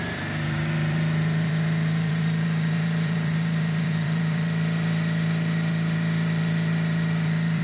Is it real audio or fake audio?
fake